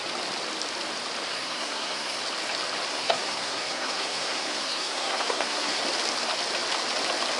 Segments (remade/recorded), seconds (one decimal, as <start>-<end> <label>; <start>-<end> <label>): 0.0-1.3 recorded; 1.3-2.2 remade; 2.2-2.9 recorded; 2.9-5.8 remade; 5.8-7.4 recorded